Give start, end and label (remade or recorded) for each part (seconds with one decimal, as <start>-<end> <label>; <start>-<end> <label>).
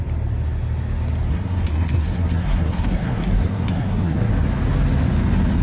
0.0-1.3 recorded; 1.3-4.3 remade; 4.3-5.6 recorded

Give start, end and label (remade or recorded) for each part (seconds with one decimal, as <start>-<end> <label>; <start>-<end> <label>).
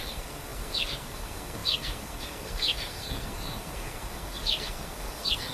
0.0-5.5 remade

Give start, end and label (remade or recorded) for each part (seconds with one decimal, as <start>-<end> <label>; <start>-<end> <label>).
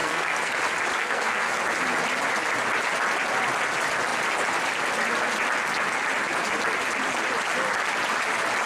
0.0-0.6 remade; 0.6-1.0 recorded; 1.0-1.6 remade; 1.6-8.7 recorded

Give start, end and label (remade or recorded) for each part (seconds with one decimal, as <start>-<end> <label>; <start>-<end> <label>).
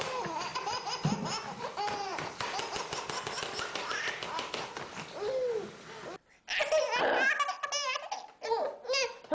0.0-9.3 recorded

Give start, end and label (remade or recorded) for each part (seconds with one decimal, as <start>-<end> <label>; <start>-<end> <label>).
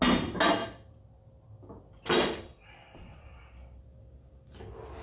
0.0-5.0 recorded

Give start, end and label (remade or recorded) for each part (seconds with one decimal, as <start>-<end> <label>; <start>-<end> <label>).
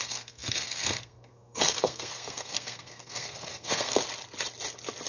0.0-4.0 remade; 4.0-5.1 recorded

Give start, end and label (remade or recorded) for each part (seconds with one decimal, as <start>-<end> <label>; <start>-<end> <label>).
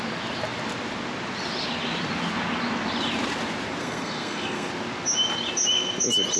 0.0-3.8 recorded; 3.8-4.7 remade; 4.7-6.4 recorded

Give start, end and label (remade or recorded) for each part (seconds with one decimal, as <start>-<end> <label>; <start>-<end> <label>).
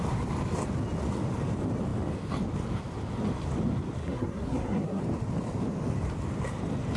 0.0-4.0 recorded; 4.0-5.0 remade; 5.0-7.0 recorded